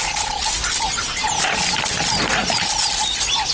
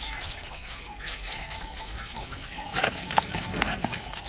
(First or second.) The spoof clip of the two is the second